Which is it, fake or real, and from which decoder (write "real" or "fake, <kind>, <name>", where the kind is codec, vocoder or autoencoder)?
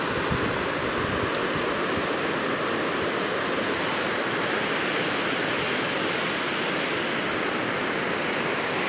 real